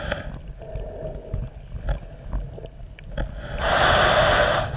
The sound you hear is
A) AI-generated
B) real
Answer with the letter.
B